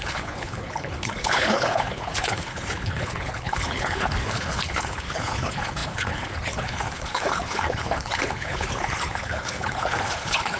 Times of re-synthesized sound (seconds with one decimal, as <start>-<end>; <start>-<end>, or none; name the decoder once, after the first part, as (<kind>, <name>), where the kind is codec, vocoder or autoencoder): 0.0-10.6 (codec, HILCodec)